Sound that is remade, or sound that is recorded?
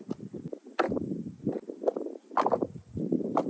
recorded